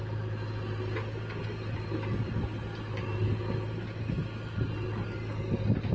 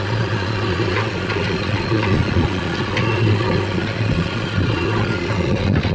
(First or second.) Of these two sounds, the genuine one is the first